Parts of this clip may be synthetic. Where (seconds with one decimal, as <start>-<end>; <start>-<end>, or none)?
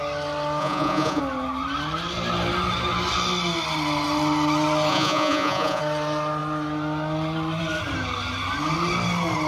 0.6-1.2; 4.9-5.8